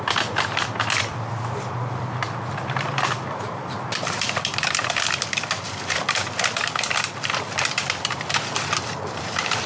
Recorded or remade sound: remade